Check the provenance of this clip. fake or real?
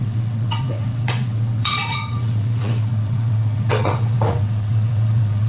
fake